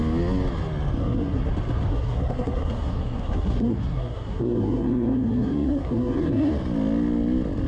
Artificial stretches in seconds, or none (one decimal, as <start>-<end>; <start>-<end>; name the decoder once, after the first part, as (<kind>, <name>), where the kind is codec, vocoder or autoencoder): 1.0-1.5 (codec, SNAC); 1.9-6.5